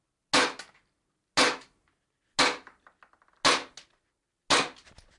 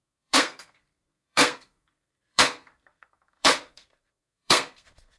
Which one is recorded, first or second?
first